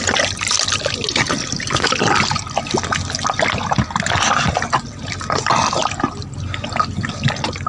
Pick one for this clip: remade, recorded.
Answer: recorded